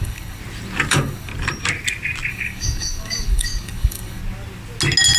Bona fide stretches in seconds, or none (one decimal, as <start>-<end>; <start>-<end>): 0.4-0.9; 1.3-2.3; 4.2-5.2